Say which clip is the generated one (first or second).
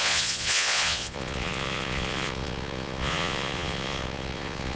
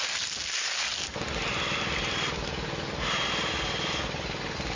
first